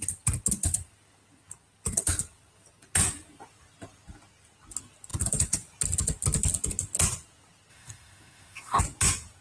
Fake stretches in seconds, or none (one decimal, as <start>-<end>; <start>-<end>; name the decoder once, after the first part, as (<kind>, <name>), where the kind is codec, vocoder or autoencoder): 7.7-8.8 (codec, SNAC)